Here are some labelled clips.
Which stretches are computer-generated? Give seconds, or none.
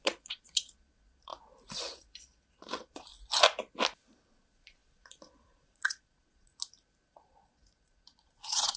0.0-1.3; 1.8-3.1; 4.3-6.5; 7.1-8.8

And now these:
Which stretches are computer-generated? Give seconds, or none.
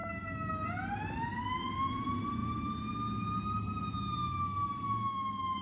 0.0-0.5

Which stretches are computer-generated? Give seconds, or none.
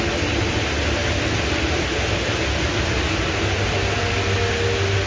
none